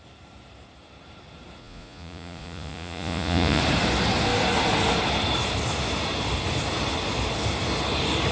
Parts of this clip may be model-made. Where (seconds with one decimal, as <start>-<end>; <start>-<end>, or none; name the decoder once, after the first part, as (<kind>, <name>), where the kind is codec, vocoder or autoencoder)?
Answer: 1.6-3.6 (vocoder, Vocos)